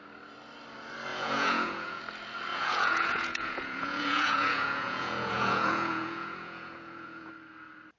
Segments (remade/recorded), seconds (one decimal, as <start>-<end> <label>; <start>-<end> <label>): 0.0-1.1 recorded; 1.1-2.0 remade; 2.0-2.5 recorded; 2.5-7.3 remade; 7.3-8.0 recorded